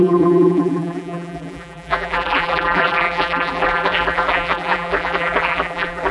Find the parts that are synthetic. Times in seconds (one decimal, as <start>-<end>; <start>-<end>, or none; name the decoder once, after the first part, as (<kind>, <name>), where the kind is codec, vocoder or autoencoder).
0.0-6.1 (vocoder, BigVGAN v2)